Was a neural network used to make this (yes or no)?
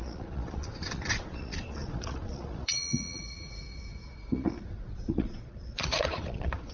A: yes